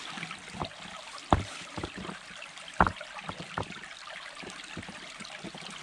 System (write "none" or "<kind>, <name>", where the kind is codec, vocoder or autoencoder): none